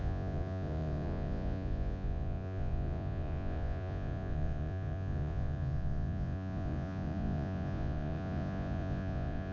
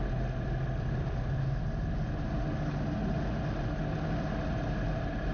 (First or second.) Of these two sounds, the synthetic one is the first